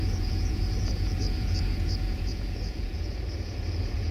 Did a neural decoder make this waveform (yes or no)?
yes